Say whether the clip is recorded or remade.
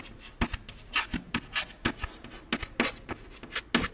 recorded